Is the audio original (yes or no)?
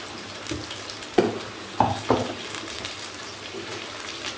no